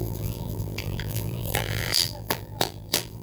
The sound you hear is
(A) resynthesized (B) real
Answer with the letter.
A